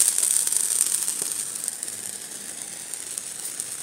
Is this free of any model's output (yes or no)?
yes